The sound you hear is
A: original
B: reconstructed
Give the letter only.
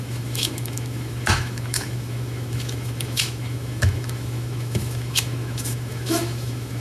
B